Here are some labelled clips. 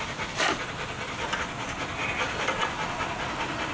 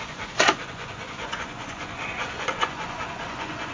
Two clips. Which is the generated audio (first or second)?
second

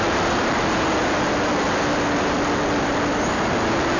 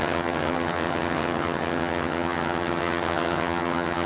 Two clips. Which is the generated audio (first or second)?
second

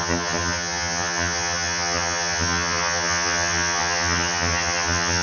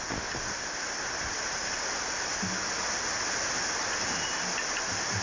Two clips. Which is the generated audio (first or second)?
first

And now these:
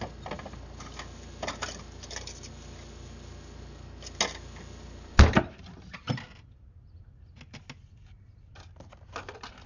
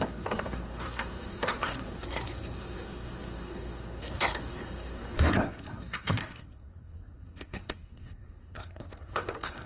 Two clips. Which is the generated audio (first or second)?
second